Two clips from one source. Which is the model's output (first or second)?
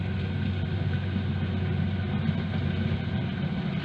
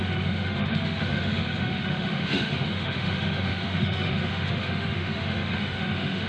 second